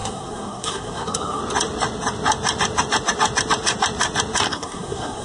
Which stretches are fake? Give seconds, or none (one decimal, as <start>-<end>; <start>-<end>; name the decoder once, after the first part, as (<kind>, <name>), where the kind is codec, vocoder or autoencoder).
0.0-1.4 (codec, SNAC); 4.5-5.2